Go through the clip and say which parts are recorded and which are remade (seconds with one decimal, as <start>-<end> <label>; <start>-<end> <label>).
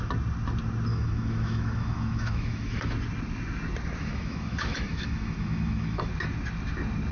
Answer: 0.0-0.9 recorded; 0.9-2.9 remade; 2.9-4.0 recorded; 4.0-6.1 remade; 6.1-7.1 recorded